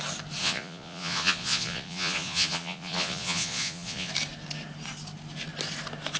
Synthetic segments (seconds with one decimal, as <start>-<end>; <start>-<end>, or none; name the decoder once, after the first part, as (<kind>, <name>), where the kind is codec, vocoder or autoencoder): 0.4-4.1 (vocoder, Vocos)